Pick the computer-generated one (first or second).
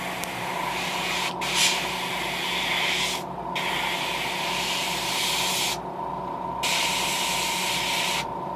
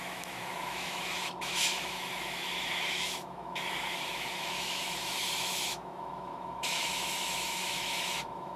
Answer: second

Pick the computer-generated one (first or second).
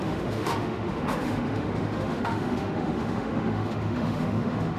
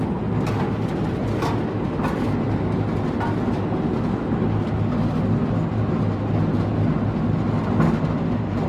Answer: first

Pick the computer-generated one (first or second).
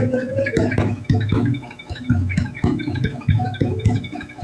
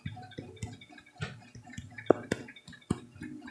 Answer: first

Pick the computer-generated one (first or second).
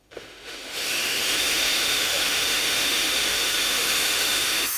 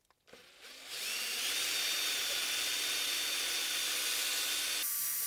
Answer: first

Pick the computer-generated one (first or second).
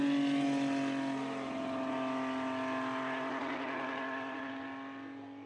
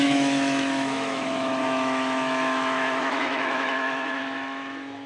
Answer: second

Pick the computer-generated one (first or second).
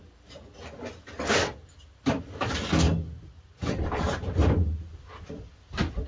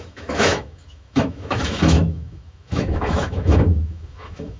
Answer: second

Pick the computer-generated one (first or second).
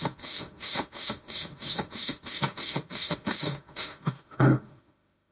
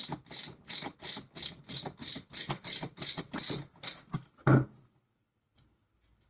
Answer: first